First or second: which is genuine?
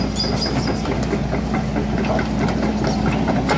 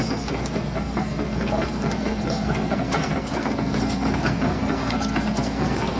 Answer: first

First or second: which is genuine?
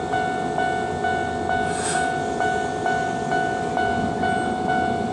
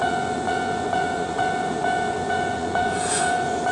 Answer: first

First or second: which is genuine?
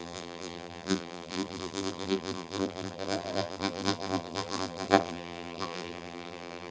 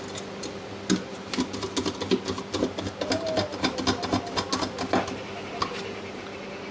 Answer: second